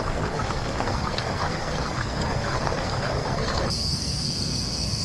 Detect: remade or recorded remade